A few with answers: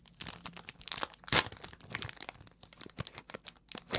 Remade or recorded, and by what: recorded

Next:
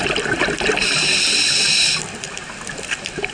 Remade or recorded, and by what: recorded